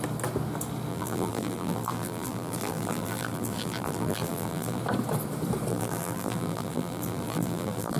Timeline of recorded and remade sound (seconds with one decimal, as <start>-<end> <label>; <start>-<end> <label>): 0.0-0.9 recorded; 0.9-4.8 remade; 4.8-5.7 recorded; 5.7-8.0 remade

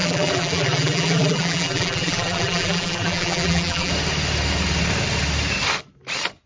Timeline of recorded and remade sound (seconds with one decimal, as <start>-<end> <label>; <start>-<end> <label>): 0.0-3.9 remade; 3.9-6.5 recorded

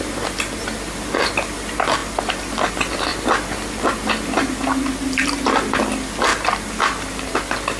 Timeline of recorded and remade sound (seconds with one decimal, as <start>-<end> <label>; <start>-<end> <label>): 0.0-2.0 recorded; 2.0-2.7 remade; 2.7-3.1 recorded; 3.1-5.7 remade; 5.7-6.3 recorded; 6.3-7.8 remade

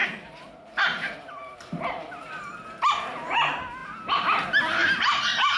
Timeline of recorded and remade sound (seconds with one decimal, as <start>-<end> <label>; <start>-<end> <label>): 0.0-2.4 remade; 2.4-5.6 recorded

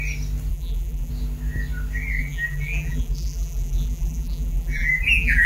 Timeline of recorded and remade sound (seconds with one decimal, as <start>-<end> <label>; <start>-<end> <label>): 0.0-0.5 recorded; 0.5-1.1 remade; 1.1-2.2 recorded; 2.2-5.5 remade

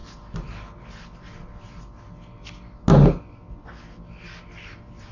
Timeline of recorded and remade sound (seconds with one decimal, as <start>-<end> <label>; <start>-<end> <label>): 0.0-5.1 recorded